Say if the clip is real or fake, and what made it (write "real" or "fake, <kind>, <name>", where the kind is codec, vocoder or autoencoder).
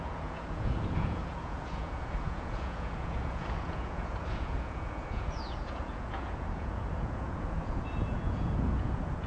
fake, vocoder, Vocos